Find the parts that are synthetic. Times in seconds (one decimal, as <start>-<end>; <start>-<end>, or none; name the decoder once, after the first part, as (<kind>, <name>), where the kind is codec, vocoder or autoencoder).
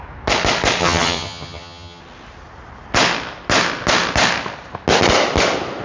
0.8-2.0 (vocoder, HiFi-GAN)